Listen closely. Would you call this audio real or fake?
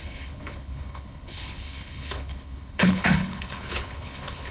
fake